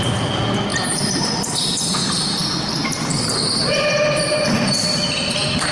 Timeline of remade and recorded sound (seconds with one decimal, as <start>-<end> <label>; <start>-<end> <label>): 0.0-0.7 recorded; 0.7-1.3 remade; 1.3-5.7 recorded